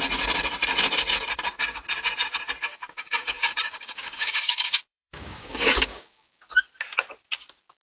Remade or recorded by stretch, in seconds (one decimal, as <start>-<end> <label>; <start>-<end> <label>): 0.0-2.7 recorded; 2.7-6.4 remade; 6.4-7.8 recorded